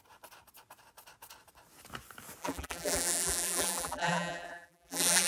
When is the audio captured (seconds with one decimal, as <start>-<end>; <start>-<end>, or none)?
0.0-2.4